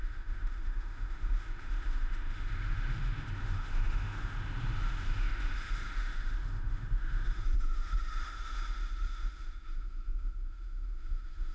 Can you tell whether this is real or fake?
fake